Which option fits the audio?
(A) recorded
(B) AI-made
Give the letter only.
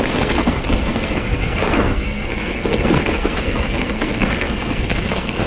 B